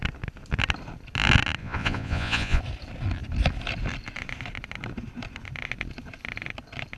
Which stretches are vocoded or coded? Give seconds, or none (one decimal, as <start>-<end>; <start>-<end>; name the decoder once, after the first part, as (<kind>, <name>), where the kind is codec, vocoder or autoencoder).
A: 1.6-2.6 (vocoder, Vocos)